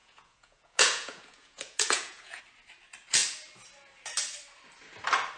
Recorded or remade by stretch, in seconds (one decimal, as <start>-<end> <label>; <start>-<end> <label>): 0.0-2.4 remade; 2.4-5.4 recorded